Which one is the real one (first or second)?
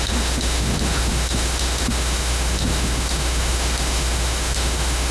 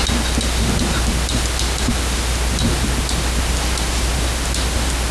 second